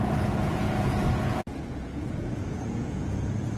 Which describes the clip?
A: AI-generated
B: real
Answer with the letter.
A